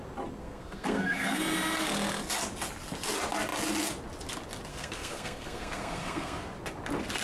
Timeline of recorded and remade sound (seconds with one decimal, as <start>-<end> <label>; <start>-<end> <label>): 0.0-0.4 recorded; 0.4-1.4 remade; 1.4-4.7 recorded; 4.7-6.4 remade; 6.4-7.2 recorded